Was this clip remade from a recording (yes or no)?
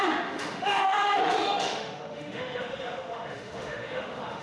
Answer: yes